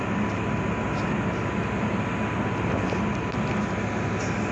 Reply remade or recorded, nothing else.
recorded